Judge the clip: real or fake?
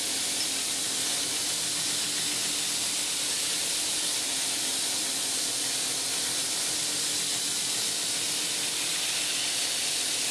real